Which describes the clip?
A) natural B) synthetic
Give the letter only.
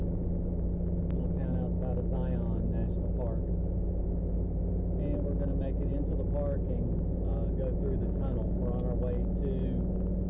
A